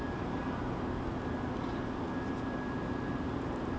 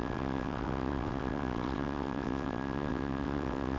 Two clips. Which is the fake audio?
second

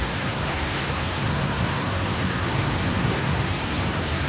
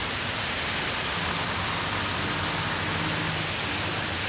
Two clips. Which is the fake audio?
first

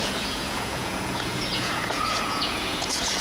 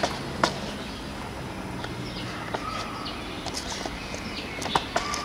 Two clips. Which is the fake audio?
first